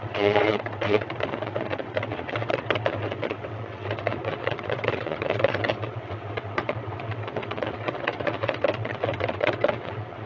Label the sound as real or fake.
fake